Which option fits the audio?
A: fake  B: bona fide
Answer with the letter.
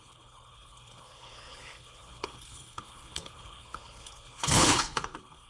A